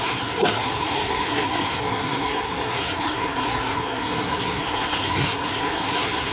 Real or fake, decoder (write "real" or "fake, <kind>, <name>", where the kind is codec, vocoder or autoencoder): fake, codec, SNAC